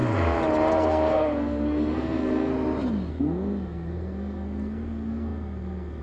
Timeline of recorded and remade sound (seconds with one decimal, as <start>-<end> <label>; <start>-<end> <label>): 0.0-0.7 recorded; 0.7-2.5 remade; 2.5-3.1 recorded; 3.1-6.0 remade